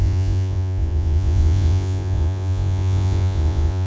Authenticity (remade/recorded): remade